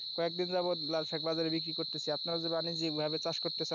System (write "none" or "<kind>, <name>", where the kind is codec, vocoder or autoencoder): none